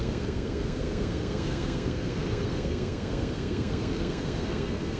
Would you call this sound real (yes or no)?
no